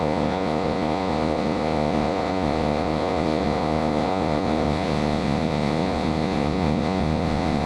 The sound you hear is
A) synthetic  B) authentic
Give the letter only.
A